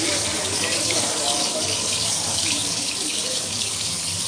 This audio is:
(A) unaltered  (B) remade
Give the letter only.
B